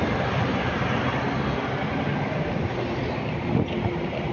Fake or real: real